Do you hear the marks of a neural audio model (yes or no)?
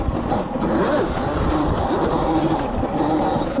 no